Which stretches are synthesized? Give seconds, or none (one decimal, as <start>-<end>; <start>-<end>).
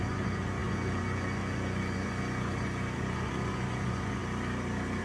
0.0-4.2